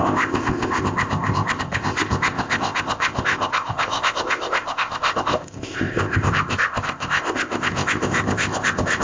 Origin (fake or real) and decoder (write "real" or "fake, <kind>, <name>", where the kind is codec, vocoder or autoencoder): fake, codec, ZipCodec